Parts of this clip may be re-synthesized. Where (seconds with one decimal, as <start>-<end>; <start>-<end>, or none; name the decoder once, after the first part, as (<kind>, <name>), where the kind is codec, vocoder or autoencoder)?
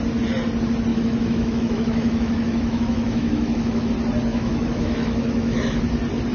0.9-3.9 (autoencoder, DAC-VAE); 4.3-5.8